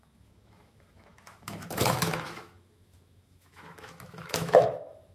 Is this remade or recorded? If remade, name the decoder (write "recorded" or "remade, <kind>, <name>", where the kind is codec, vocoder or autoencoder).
remade, autoencoder, DAC-VAE